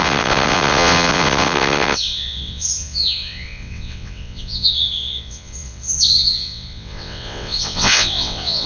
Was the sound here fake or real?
fake